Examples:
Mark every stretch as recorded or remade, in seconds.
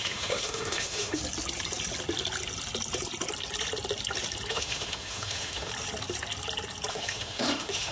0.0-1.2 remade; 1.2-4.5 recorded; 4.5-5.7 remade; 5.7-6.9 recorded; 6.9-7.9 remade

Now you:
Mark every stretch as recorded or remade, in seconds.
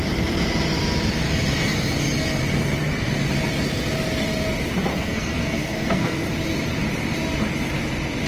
0.0-4.9 recorded; 4.9-6.3 remade; 6.3-8.3 recorded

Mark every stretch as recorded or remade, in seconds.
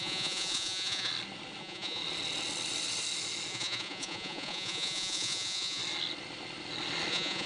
0.0-1.1 remade; 1.1-1.6 recorded; 1.6-2.0 remade; 2.0-3.5 recorded; 3.5-5.8 remade; 5.8-7.1 recorded; 7.1-7.5 remade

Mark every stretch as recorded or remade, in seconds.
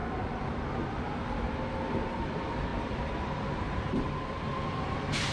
0.0-1.4 remade; 1.4-2.2 recorded; 2.2-5.3 remade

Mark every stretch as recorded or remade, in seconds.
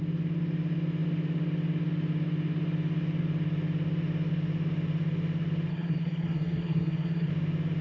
0.0-5.7 recorded; 5.7-7.3 remade; 7.3-7.8 recorded